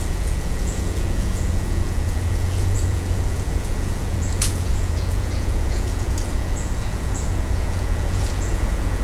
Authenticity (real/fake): fake